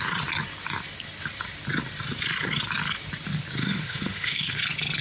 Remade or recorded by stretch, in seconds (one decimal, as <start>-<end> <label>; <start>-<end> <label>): 0.0-3.6 recorded; 3.6-4.6 remade; 4.6-5.0 recorded